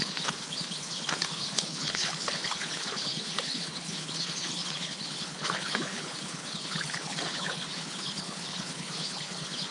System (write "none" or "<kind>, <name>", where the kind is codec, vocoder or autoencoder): codec, HILCodec